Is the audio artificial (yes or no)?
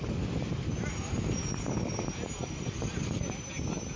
no